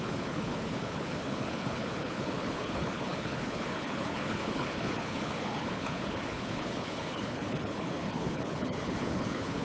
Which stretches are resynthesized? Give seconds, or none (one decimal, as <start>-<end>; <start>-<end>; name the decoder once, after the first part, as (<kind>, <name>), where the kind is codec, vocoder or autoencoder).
0.0-9.6 (codec, HILCodec)